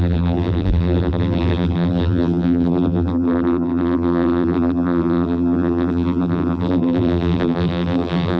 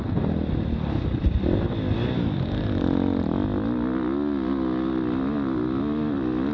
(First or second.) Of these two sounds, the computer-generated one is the first